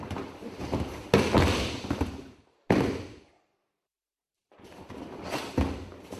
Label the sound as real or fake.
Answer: real